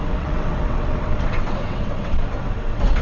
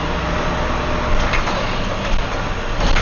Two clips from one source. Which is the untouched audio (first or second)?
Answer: second